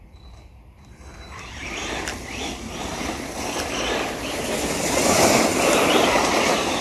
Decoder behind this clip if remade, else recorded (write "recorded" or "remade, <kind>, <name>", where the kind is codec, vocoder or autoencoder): recorded